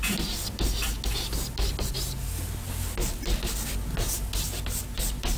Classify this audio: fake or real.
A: real